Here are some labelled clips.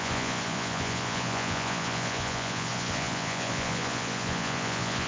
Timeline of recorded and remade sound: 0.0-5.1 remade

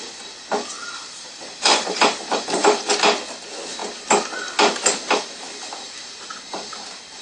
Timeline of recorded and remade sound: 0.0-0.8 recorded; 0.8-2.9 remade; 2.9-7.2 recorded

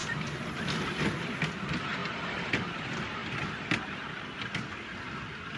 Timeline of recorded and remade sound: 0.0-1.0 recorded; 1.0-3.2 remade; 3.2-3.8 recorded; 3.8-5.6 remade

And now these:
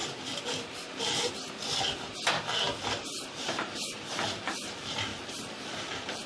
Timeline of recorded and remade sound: 0.0-3.4 recorded; 3.4-6.3 remade